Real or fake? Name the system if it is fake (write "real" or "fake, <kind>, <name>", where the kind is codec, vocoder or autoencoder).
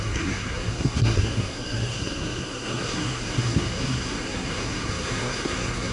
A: fake, codec, SNAC